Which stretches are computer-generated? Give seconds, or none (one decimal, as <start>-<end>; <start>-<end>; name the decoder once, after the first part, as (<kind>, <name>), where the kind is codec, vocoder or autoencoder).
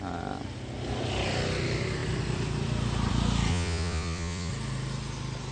3.5-4.5 (vocoder, Vocos)